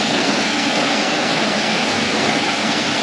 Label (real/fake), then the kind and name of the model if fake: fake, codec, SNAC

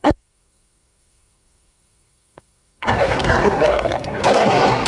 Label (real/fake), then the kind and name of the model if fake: fake, codec, SNAC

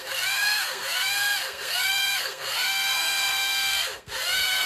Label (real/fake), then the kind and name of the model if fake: fake, codec, SNAC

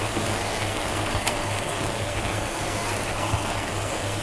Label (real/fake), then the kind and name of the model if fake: fake, codec, SNAC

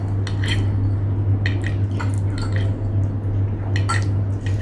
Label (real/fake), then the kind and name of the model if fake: real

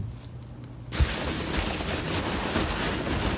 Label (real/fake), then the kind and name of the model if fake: real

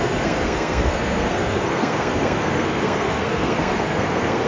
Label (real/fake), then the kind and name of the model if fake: fake, codec, SNAC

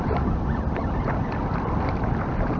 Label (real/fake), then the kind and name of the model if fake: real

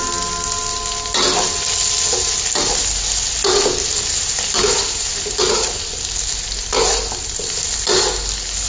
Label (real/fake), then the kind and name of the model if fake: real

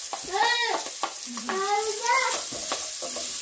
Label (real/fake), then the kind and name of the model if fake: real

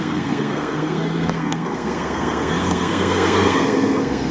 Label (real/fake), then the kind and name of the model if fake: fake, codec, SNAC